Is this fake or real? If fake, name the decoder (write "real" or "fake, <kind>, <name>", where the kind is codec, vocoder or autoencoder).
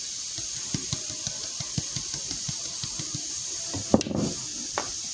real